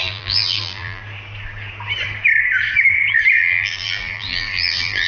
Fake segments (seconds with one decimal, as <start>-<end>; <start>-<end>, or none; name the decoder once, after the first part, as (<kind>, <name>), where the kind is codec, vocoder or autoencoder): 0.0-1.0 (vocoder, BigVGAN v2); 3.4-5.1